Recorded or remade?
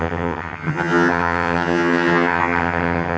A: remade